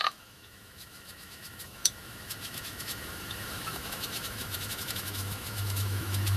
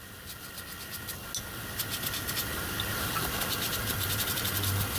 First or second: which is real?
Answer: second